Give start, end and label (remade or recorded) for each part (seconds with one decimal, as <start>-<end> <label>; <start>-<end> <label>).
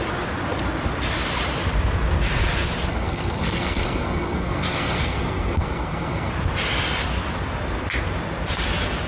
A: 0.0-2.9 recorded; 2.9-6.3 remade; 6.3-9.1 recorded